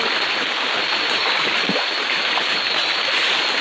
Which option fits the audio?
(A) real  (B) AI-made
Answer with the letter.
A